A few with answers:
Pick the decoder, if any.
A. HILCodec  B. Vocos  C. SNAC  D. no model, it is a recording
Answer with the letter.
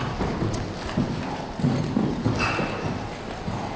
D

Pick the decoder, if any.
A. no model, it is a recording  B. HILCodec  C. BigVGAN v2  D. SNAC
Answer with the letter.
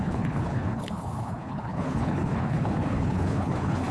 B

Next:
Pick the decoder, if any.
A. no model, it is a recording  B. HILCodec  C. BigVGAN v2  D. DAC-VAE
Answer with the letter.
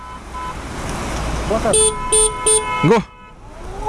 A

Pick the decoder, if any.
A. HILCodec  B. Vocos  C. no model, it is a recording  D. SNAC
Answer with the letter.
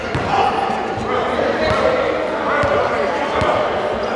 C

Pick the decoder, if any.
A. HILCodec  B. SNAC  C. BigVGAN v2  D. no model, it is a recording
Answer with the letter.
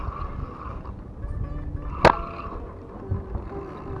D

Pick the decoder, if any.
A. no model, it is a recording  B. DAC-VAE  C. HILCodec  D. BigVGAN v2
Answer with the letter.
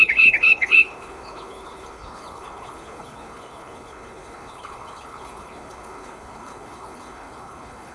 C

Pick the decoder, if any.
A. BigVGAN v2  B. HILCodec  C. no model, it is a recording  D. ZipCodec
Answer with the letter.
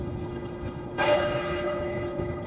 B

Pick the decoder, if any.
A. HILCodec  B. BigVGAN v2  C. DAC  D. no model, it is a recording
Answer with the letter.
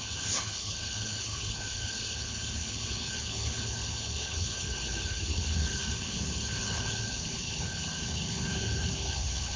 A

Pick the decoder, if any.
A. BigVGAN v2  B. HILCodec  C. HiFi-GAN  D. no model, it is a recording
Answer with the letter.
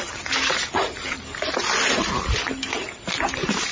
D